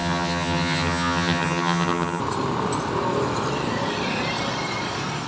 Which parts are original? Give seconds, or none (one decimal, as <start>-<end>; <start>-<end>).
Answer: 2.2-5.3